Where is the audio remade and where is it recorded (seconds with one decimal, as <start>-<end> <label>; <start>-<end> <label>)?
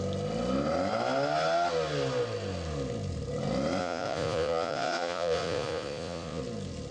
0.0-3.8 recorded; 3.8-6.4 remade; 6.4-6.9 recorded